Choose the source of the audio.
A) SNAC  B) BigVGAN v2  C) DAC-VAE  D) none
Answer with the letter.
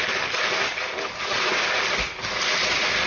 D